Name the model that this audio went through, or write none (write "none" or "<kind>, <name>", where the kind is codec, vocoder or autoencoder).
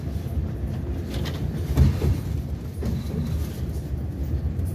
none